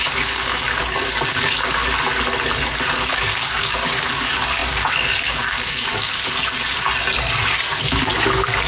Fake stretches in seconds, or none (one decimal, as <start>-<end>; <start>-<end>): 0.0-1.8; 2.9-6.2; 7.8-8.7